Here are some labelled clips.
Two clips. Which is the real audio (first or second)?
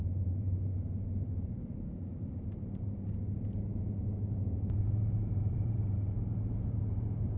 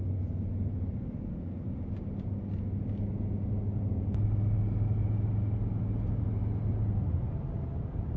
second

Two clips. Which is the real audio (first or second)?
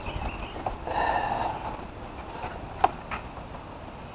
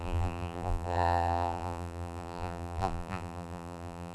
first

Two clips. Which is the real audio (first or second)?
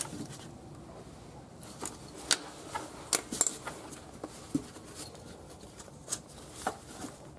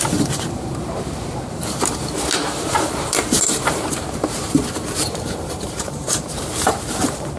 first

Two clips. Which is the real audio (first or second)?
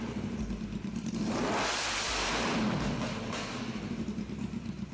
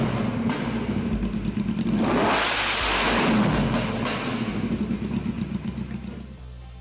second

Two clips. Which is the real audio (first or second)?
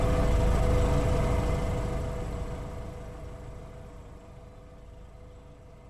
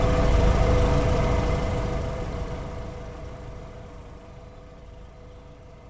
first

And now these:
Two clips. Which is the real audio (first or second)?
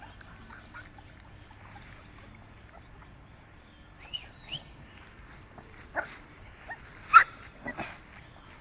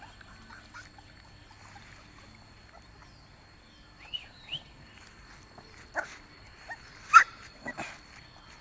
second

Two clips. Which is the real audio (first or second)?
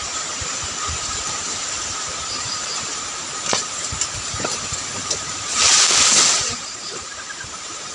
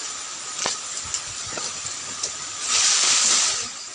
second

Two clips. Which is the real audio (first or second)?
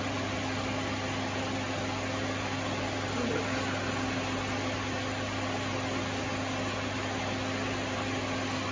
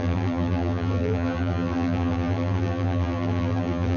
first